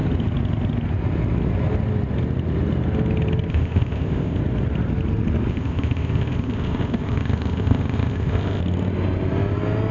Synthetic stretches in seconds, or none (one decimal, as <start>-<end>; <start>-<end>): 3.5-4.4; 5.5-8.6